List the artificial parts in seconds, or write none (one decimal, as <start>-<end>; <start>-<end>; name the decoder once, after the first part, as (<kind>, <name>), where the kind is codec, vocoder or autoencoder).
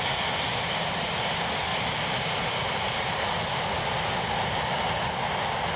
1.7-3.8 (vocoder, BigVGAN v2)